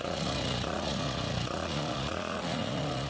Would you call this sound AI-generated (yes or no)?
yes